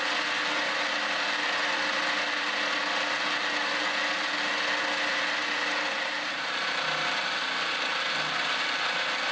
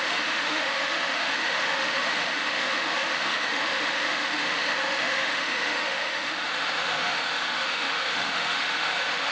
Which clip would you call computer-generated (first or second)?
second